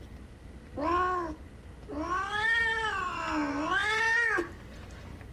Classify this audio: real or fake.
real